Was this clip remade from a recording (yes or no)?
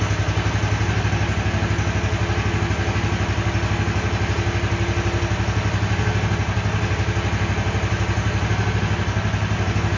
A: no